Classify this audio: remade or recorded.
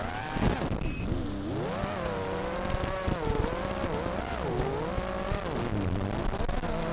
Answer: recorded